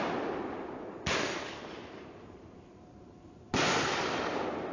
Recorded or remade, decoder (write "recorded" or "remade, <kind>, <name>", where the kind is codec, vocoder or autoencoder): recorded